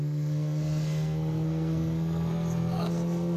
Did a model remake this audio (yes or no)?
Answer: yes